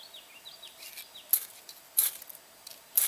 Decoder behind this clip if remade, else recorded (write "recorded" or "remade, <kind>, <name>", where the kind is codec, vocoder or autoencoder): recorded